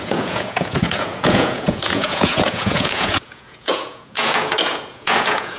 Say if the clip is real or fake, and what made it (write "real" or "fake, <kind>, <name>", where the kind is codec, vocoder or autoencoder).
fake, vocoder, Vocos